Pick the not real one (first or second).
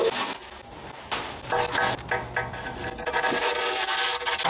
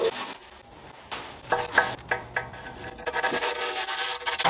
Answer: second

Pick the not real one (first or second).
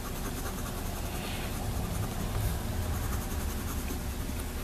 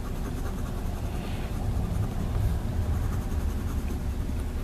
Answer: second